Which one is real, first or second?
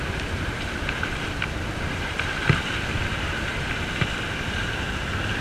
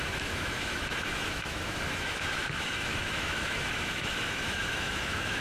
first